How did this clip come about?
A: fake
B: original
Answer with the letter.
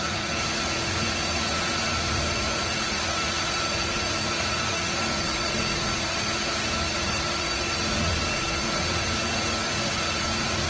A